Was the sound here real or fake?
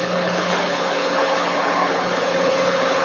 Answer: fake